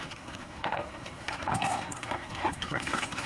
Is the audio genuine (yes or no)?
no